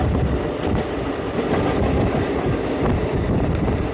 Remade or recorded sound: recorded